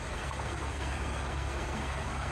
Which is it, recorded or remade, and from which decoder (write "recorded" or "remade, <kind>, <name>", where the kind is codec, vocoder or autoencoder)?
remade, codec, SNAC